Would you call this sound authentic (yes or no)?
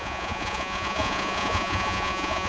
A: no